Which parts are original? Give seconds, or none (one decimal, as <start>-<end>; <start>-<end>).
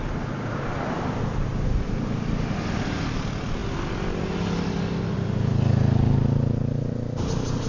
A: 0.0-7.7